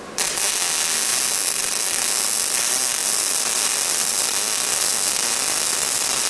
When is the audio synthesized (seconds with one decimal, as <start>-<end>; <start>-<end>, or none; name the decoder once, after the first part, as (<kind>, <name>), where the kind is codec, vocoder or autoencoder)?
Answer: none